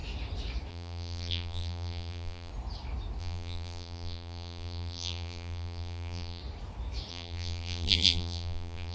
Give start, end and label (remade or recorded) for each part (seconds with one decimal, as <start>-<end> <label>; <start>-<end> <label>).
0.0-0.7 recorded; 0.7-2.5 remade; 2.5-3.2 recorded; 3.2-6.4 remade; 6.4-7.1 recorded; 7.1-8.9 remade

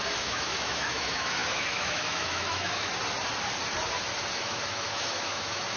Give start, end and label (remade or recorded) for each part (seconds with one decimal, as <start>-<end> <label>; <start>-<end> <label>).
0.0-2.9 remade; 2.9-4.4 recorded; 4.4-5.8 remade

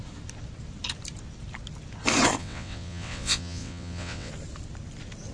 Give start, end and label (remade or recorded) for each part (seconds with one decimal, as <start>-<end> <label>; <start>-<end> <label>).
0.0-2.4 recorded; 2.4-4.3 remade; 4.3-5.3 recorded

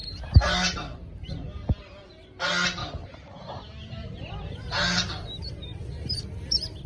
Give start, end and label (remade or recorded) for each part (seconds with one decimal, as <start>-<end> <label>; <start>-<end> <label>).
0.0-2.8 recorded; 2.8-4.6 remade; 4.6-6.9 recorded

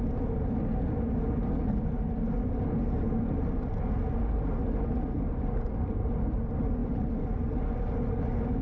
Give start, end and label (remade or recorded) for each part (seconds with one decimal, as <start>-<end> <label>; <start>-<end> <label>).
0.0-8.6 recorded